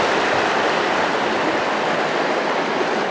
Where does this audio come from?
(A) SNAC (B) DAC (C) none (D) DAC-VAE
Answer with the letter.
C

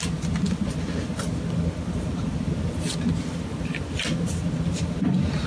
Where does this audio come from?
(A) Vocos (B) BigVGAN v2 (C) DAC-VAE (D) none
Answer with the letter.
D